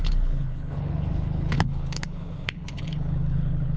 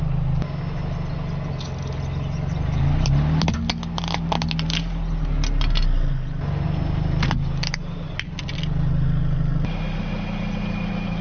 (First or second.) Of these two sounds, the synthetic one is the first